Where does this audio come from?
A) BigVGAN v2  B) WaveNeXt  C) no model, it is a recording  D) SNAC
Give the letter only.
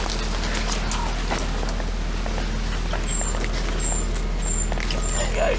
C